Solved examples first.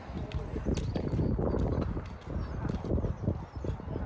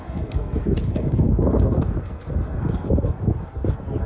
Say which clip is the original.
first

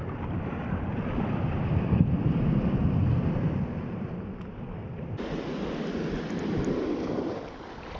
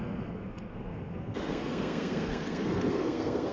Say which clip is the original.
first